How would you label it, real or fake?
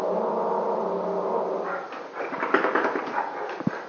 real